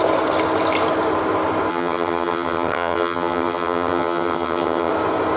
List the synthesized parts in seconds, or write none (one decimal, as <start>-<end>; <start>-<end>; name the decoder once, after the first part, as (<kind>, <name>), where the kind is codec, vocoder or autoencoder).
1.7-4.9 (vocoder, HiFi-GAN)